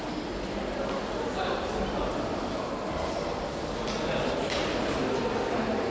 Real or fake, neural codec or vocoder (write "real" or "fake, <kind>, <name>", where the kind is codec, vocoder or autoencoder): real